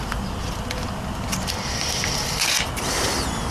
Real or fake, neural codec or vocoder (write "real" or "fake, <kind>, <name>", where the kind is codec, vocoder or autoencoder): real